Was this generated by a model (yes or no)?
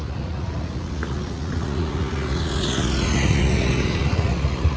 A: yes